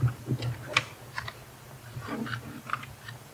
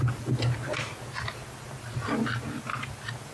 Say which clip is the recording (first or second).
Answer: second